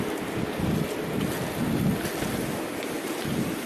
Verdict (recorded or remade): recorded